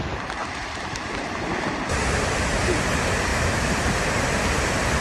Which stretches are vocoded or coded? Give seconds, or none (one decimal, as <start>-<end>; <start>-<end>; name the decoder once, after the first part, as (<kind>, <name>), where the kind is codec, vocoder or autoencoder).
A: 0.4-2.9 (vocoder, BigVGAN v2); 3.3-4.3